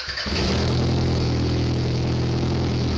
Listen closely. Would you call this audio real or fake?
fake